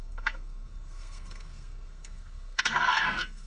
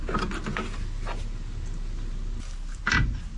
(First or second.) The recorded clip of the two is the second